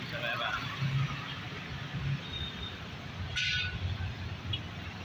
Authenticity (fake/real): real